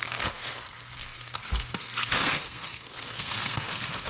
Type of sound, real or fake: fake